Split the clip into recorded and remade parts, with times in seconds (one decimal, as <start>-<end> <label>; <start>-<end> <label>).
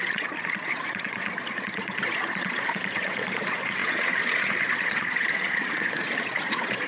0.0-6.9 remade